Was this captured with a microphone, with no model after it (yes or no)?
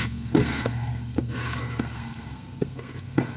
no